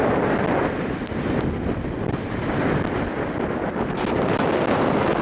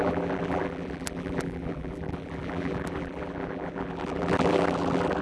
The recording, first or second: first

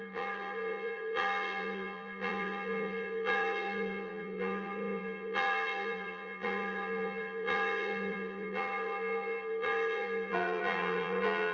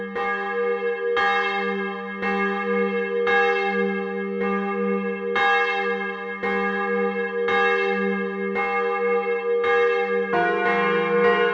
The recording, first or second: second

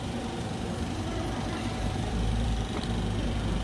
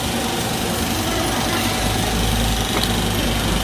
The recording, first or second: second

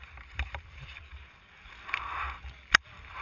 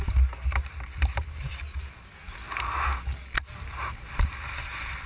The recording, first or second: second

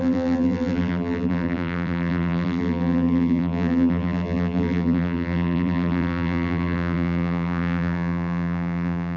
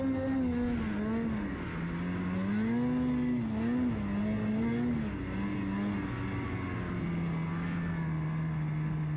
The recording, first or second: second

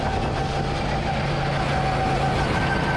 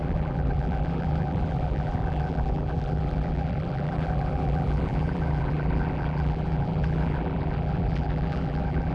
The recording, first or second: first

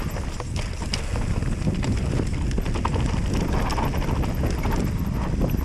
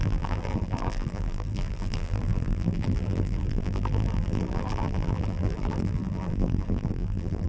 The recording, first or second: first